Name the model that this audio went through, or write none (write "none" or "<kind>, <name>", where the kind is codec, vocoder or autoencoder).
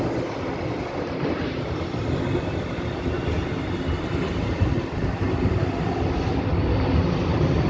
none